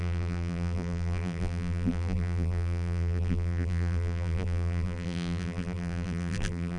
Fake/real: fake